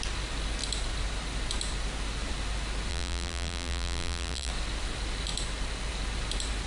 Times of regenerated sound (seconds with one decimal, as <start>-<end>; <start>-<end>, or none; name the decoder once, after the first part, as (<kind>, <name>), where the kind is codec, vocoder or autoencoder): 2.9-4.5 (vocoder, BigVGAN v2)

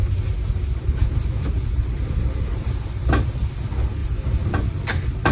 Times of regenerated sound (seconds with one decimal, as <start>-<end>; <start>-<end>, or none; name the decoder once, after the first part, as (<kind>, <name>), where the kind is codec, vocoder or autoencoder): 1.0-3.4 (vocoder, BigVGAN v2); 4.0-5.3